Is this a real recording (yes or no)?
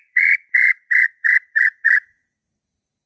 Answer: no